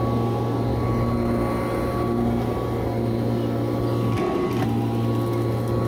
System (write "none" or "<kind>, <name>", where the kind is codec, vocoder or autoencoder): none